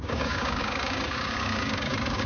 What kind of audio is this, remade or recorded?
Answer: remade